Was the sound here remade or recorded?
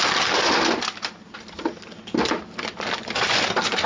recorded